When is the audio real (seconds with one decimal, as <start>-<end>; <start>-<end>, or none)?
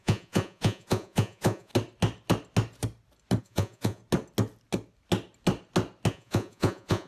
1.7-3.4; 4.0-6.1